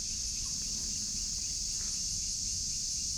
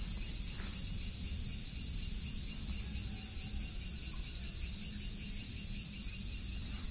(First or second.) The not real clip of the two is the first